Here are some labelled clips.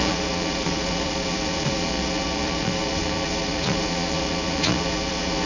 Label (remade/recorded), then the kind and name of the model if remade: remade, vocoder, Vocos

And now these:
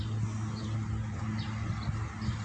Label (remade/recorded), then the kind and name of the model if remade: recorded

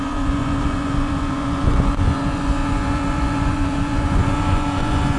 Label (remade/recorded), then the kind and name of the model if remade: remade, vocoder, Vocos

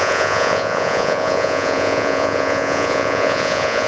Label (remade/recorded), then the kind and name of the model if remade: remade, vocoder, Vocos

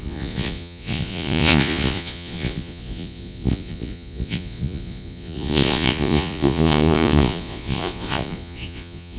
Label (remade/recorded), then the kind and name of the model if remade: remade, vocoder, Vocos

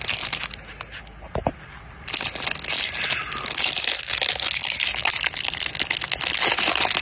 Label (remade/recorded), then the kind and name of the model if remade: recorded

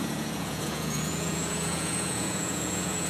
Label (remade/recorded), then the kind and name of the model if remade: remade, vocoder, Vocos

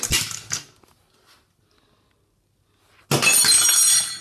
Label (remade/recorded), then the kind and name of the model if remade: recorded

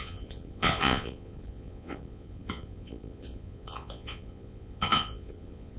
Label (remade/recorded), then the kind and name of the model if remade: remade, vocoder, Vocos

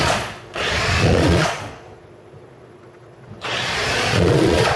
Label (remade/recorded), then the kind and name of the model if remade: remade, vocoder, Vocos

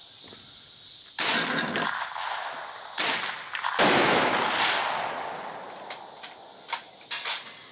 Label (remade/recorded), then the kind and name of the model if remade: recorded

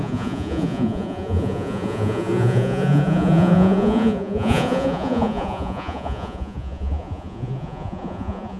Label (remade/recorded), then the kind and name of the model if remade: remade, vocoder, Vocos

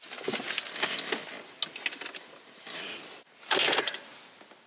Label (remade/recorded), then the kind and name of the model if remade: recorded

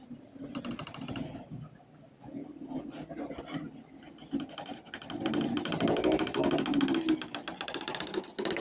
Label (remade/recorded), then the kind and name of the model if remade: recorded